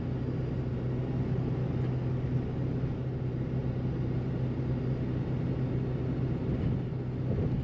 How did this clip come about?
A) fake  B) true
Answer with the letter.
B